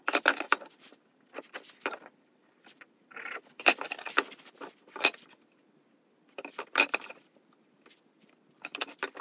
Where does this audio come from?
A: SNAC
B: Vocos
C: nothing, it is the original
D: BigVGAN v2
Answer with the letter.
D